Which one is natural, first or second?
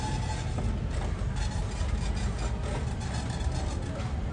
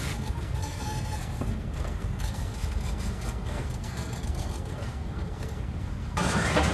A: first